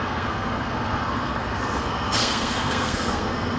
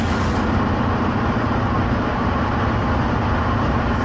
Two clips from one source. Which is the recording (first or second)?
second